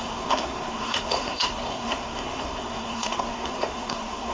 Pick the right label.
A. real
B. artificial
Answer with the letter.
B